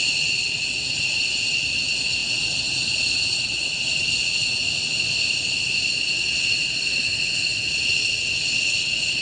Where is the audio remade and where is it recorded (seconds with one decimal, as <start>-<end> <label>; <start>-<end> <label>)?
0.0-4.6 remade; 4.6-6.1 recorded; 6.1-9.2 remade